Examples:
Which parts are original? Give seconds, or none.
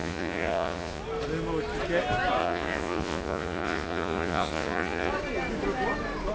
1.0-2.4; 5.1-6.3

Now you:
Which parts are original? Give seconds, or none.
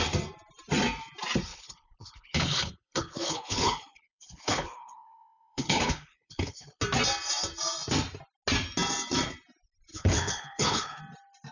0.0-1.5; 6.8-9.9; 11.0-11.5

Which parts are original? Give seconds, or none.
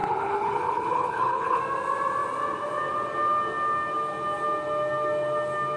1.6-5.8